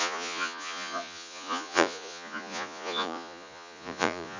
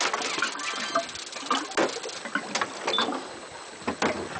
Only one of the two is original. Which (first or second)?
second